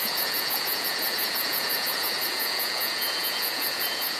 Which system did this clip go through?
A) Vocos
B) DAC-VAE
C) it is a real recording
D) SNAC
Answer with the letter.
A